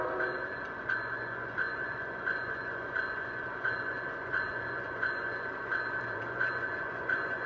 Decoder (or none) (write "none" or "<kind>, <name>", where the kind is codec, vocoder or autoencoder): vocoder, Vocos